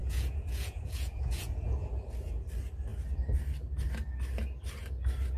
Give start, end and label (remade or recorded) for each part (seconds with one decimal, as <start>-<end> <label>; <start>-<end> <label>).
0.0-1.9 remade; 1.9-5.4 recorded